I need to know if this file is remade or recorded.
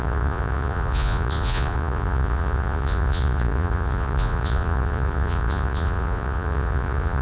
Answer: remade